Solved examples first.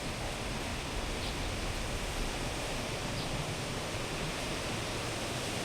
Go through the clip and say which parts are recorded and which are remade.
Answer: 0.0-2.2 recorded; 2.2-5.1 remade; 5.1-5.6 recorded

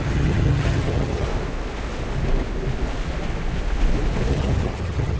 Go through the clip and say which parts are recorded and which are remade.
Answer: 0.0-1.3 remade; 1.3-4.3 recorded; 4.3-5.2 remade

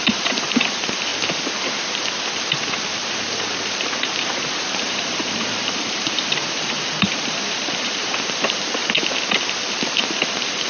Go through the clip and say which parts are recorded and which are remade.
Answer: 0.0-1.1 remade; 1.1-4.2 recorded; 4.2-8.8 remade; 8.8-10.0 recorded; 10.0-10.7 remade